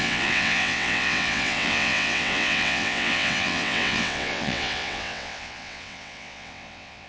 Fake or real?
fake